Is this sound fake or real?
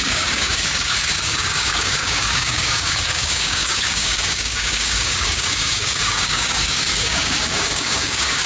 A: fake